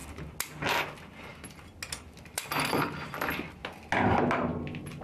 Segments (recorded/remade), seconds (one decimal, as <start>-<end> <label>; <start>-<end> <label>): 0.0-5.0 recorded